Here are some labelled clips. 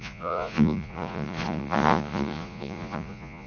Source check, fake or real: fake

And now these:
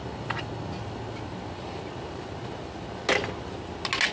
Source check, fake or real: real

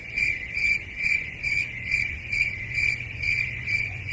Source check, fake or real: fake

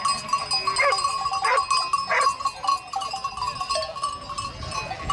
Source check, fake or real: real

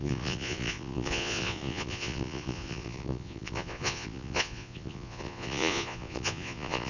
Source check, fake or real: fake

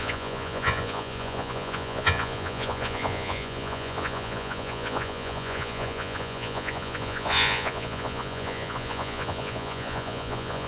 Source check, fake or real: fake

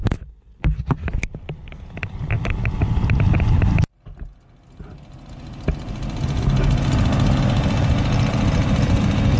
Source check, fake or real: real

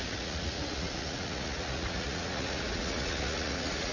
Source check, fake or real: fake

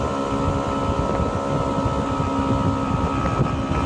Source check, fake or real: real